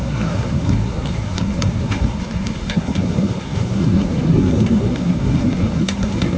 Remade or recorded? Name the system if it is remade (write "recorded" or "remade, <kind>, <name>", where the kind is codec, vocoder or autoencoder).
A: remade, codec, SNAC